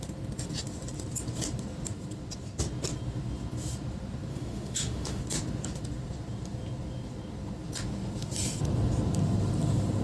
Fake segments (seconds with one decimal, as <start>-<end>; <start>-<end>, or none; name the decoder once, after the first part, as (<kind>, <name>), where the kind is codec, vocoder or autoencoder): 4.3-5.2 (autoencoder, DAC-VAE)